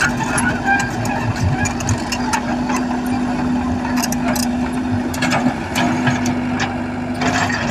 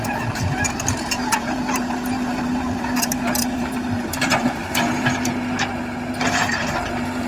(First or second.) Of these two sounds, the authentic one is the first